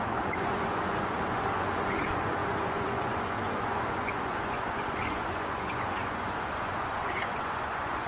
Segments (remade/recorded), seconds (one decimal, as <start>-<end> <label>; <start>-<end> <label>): 0.0-8.1 remade